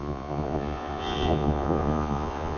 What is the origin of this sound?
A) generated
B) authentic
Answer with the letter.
A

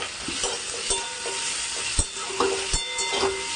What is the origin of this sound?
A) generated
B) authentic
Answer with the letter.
B